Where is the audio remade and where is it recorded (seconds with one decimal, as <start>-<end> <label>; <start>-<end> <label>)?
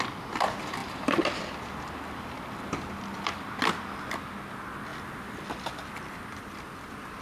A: 0.0-0.8 recorded; 0.8-3.4 remade; 3.4-7.2 recorded